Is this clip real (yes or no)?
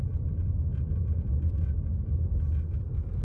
yes